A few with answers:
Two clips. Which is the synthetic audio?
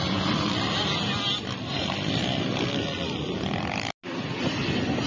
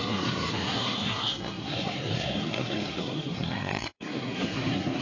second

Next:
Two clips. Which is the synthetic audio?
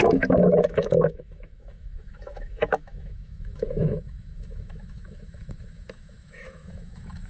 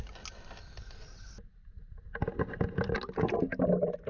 first